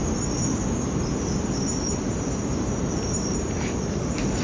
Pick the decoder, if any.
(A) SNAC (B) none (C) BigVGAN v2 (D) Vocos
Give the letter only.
B